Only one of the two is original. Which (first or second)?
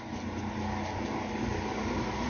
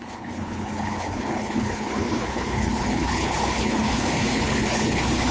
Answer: first